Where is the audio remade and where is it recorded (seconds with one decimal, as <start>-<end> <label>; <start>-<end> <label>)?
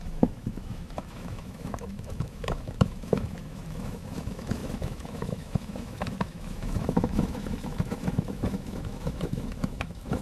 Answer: 0.0-10.2 remade